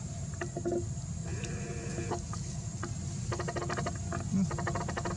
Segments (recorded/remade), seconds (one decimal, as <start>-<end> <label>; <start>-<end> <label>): 0.0-5.2 recorded